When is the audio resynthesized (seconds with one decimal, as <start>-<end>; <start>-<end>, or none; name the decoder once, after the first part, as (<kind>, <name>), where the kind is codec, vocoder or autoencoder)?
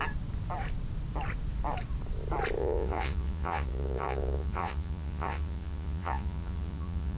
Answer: 2.6-7.2 (vocoder, Vocos)